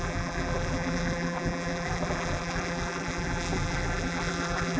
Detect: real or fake fake